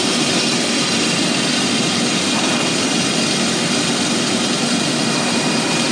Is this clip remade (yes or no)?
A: yes